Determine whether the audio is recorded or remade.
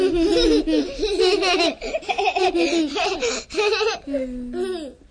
recorded